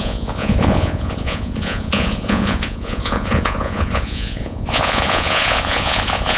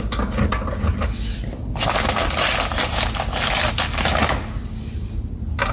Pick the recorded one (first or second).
second